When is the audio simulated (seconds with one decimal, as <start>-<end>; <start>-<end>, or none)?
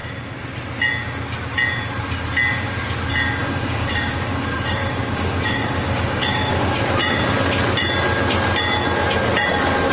3.4-6.8